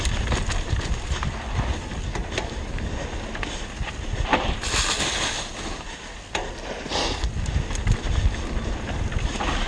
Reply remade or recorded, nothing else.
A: recorded